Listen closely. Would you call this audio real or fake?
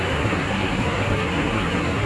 fake